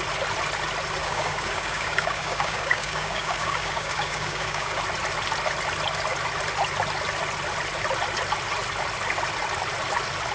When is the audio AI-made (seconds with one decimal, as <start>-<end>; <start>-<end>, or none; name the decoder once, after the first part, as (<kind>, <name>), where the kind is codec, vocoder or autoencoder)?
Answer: 1.0-4.8 (codec, DAC)